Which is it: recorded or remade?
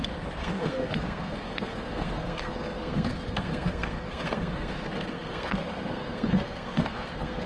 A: remade